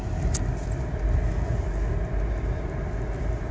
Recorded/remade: recorded